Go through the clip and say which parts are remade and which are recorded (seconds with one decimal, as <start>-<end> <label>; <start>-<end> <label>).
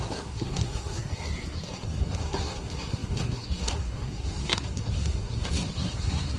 0.0-6.4 remade